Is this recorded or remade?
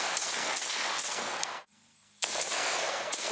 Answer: remade